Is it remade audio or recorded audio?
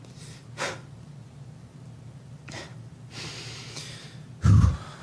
recorded